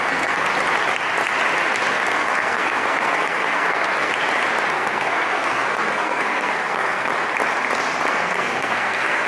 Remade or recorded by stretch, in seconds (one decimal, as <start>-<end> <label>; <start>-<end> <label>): 0.0-0.5 remade; 0.5-1.9 recorded; 1.9-4.1 remade; 4.1-4.7 recorded; 4.7-7.1 remade; 7.1-8.1 recorded; 8.1-9.3 remade